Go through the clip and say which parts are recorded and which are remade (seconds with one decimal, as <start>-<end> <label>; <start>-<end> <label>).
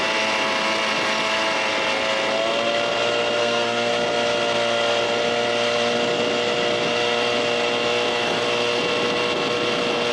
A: 0.0-3.4 recorded; 3.4-3.9 remade; 3.9-10.1 recorded